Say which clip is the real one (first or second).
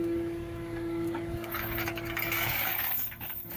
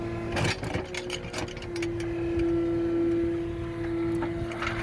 second